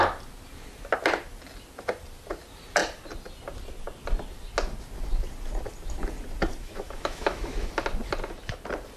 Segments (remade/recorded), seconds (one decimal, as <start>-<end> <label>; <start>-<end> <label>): 0.0-6.6 recorded; 6.6-7.7 remade; 7.7-9.0 recorded